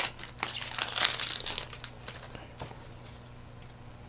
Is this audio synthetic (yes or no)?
no